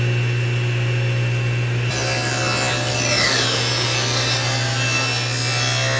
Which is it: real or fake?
real